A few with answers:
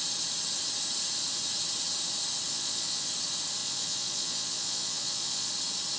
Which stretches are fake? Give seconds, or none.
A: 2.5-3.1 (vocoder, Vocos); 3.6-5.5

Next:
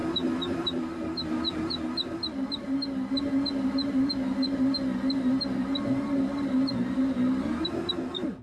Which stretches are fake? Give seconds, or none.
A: 2.5-4.8 (vocoder, BigVGAN v2)

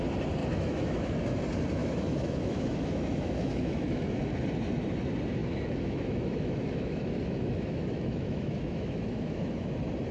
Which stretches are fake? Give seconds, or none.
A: 0.4-1.2 (autoencoder, DAC-VAE); 1.8-4.2; 5.4-9.7

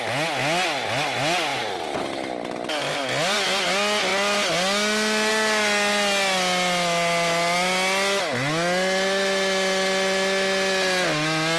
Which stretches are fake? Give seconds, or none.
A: none

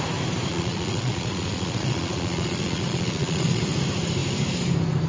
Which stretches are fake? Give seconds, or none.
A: 0.5-3.6 (vocoder, Vocos)